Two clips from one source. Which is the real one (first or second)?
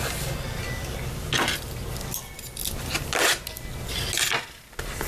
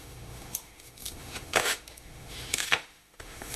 first